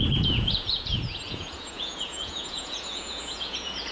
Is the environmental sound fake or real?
fake